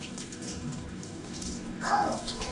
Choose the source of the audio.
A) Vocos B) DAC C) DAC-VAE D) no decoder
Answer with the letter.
B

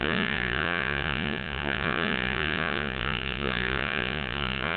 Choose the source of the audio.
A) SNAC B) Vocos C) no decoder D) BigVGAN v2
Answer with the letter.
B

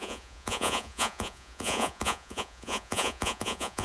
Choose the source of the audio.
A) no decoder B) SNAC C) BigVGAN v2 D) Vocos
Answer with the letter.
D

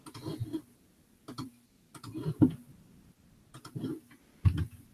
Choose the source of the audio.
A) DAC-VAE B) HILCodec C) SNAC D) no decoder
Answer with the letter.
D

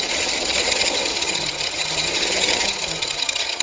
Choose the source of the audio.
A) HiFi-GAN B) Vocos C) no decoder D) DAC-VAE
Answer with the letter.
A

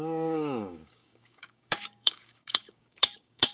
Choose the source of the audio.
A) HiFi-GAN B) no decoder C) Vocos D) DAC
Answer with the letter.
D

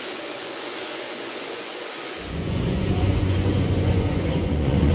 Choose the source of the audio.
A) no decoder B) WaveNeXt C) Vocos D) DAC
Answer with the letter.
C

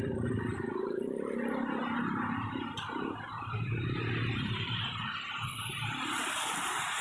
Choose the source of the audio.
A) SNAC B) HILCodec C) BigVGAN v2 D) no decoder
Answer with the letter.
C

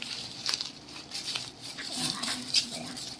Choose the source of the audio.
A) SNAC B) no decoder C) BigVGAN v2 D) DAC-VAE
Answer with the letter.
C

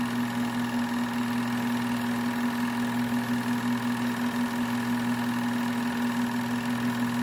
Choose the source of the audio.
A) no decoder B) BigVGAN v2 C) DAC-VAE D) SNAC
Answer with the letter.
A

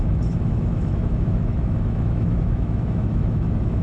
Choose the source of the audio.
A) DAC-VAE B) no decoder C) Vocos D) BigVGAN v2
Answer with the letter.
A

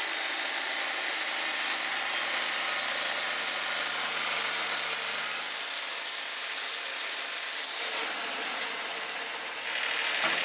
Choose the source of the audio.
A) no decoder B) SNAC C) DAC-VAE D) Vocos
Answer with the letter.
A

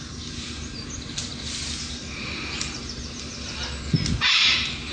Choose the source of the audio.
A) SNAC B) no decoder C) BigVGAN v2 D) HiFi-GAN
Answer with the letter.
B